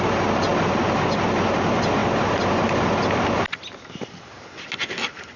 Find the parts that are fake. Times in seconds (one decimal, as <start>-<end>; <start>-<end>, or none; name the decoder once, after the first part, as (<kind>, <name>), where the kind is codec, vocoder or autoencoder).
none